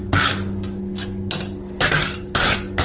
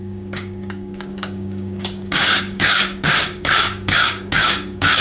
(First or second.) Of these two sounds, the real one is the first